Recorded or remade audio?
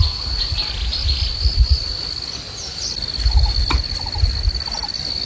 recorded